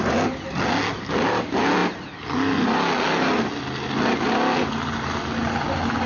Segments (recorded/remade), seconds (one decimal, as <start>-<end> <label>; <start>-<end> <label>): 0.0-6.1 recorded